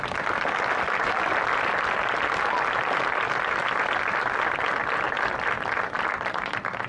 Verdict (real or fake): real